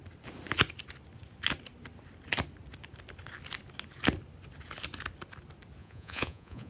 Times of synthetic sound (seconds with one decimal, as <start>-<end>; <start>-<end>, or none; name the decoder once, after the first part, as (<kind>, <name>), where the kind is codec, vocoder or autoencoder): 5.8-6.7 (vocoder, Vocos)